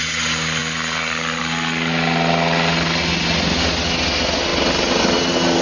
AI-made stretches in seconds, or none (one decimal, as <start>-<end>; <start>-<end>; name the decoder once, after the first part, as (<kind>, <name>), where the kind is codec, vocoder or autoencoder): none